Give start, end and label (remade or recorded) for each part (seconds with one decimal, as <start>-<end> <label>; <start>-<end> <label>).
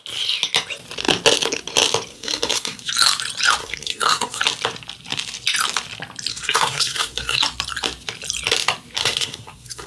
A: 0.0-2.1 recorded; 2.1-2.9 remade; 2.9-3.6 recorded; 3.6-4.4 remade; 4.4-6.3 recorded; 6.3-7.4 remade; 7.4-9.0 recorded; 9.0-9.9 remade